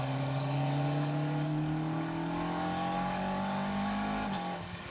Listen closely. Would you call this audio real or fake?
fake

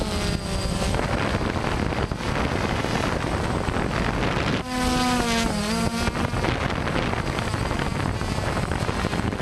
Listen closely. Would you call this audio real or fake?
real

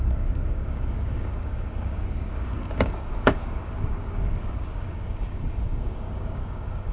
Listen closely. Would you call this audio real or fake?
fake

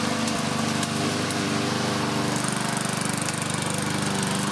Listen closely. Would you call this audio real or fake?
real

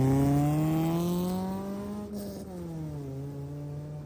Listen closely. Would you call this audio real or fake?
real